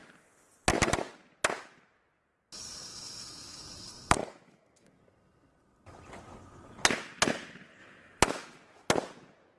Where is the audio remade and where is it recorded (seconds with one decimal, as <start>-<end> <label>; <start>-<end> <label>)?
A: 0.0-2.9 recorded; 2.9-3.6 remade; 3.6-4.2 recorded; 4.2-5.0 remade; 5.0-7.8 recorded; 7.8-8.9 remade; 8.9-9.6 recorded